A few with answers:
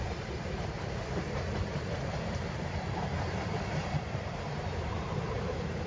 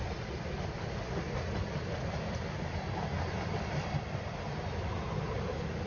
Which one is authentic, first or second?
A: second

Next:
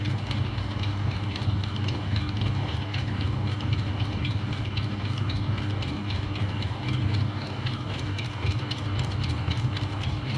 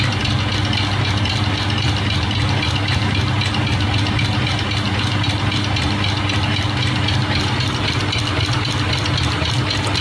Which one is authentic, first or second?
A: second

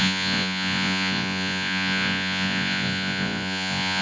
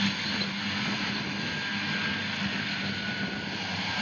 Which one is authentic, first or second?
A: second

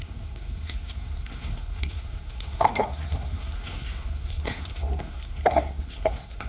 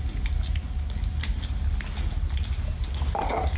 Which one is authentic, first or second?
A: second